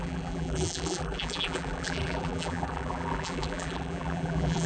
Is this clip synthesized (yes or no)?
yes